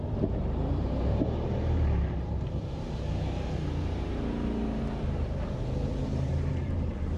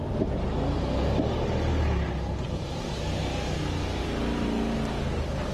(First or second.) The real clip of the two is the second